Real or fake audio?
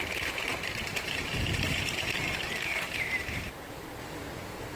fake